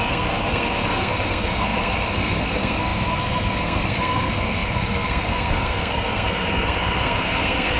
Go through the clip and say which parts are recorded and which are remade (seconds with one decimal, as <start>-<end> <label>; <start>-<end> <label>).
0.0-7.8 remade